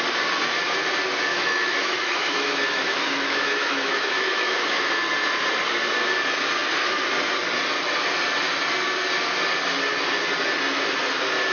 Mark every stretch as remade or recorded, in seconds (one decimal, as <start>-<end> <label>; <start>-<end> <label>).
0.0-1.3 recorded; 1.3-4.9 remade; 4.9-11.5 recorded